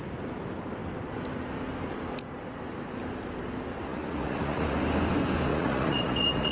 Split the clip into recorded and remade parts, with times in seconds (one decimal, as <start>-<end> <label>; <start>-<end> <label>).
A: 0.0-3.9 recorded; 3.9-4.8 remade; 4.8-5.5 recorded; 5.5-6.5 remade